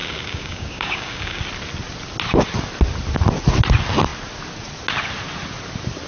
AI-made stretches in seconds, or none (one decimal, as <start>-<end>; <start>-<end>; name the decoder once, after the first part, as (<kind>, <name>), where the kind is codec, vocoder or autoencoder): 0.0-1.4 (codec, DAC)